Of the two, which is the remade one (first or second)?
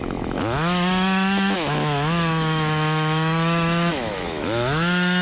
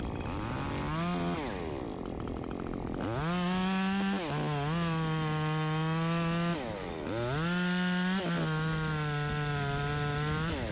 first